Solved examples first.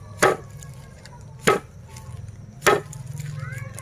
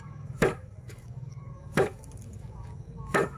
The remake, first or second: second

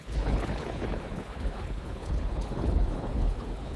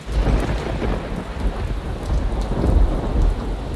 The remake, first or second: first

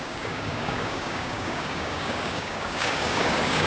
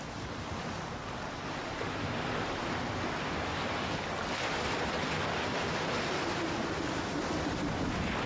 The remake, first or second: first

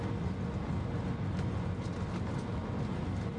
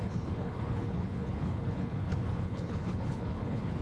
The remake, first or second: second